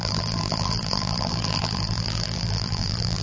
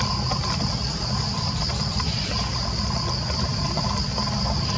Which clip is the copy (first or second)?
first